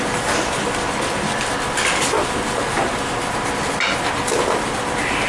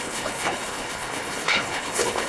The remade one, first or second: second